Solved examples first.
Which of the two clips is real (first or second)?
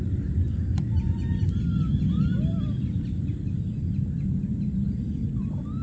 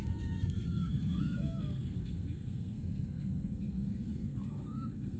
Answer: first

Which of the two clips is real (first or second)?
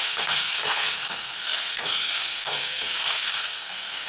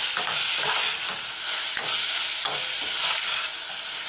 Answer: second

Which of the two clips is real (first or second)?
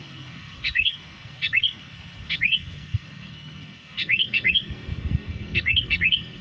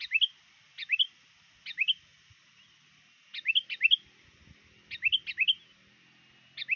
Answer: second